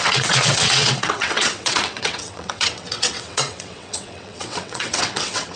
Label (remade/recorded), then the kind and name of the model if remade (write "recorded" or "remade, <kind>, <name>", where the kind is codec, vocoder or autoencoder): remade, vocoder, WaveNeXt